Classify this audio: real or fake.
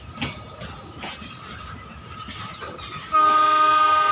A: real